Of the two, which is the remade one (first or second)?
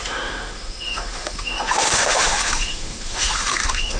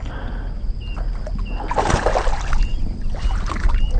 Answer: first